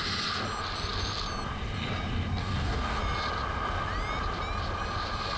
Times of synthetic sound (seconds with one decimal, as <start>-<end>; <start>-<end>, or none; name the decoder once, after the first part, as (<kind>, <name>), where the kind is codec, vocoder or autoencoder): 2.4-3.0 (codec, DAC)